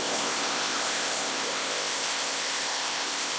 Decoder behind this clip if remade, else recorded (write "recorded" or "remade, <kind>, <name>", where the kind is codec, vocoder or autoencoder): remade, codec, ZipCodec